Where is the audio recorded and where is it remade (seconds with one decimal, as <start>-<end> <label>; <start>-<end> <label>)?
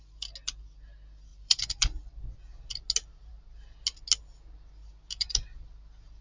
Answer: 0.0-1.3 recorded; 1.3-2.0 remade; 2.0-6.2 recorded